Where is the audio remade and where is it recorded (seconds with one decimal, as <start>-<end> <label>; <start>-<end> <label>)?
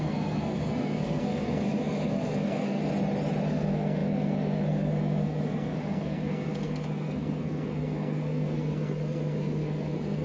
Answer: 0.0-2.8 remade; 2.8-3.5 recorded; 3.5-10.2 remade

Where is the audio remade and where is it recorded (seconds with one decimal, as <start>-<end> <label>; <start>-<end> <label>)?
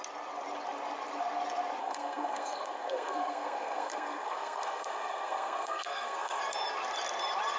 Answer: 0.0-1.8 recorded; 1.8-6.4 remade; 6.4-7.6 recorded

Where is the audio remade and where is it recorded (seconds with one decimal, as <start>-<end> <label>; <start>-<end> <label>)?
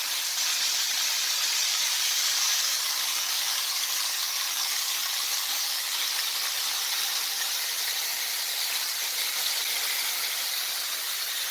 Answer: 0.0-1.7 recorded; 1.7-6.0 remade; 6.0-11.5 recorded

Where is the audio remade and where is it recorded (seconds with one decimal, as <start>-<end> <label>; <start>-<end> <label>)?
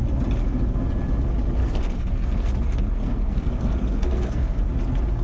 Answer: 0.0-1.6 recorded; 1.6-4.7 remade; 4.7-5.2 recorded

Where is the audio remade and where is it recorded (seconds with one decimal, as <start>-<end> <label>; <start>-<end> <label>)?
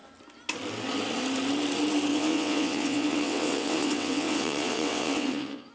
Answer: 0.0-2.1 recorded; 2.1-5.7 remade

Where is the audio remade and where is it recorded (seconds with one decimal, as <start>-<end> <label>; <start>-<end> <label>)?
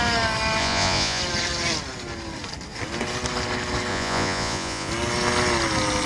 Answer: 0.0-0.6 recorded; 0.6-1.2 remade; 1.2-3.9 recorded; 3.9-4.9 remade; 4.9-6.1 recorded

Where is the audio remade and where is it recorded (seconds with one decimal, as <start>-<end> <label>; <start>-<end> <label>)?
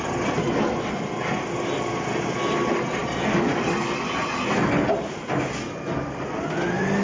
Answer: 0.0-7.0 recorded